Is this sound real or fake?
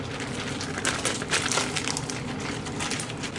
real